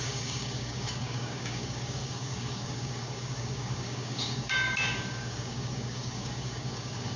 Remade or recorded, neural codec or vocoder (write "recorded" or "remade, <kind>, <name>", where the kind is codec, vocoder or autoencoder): remade, codec, DAC